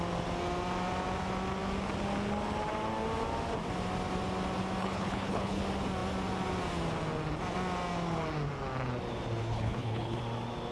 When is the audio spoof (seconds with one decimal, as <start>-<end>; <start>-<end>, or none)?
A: 4.8-5.6; 9.4-10.2